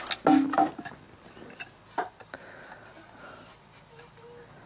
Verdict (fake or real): real